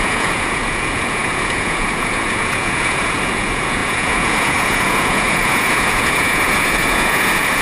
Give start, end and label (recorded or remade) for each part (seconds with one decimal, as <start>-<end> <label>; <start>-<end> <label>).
0.0-7.6 remade